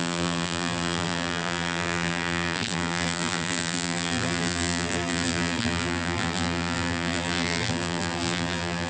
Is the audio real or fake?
fake